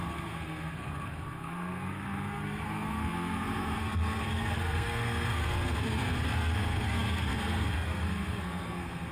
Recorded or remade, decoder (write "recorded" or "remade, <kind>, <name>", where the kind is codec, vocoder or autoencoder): remade, codec, SNAC